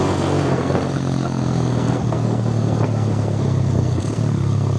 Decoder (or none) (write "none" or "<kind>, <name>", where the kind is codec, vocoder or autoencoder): codec, SNAC